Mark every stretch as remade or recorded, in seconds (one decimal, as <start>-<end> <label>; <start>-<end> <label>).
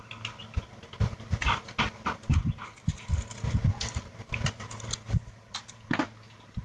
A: 0.0-6.6 recorded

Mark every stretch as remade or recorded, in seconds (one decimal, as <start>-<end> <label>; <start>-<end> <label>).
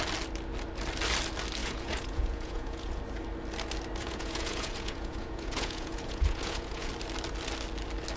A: 0.0-1.6 recorded; 1.6-3.0 remade; 3.0-4.0 recorded; 4.0-6.9 remade; 6.9-8.2 recorded